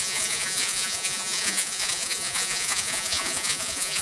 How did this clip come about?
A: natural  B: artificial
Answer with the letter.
B